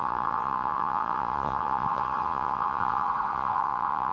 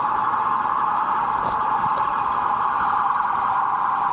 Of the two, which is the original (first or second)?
second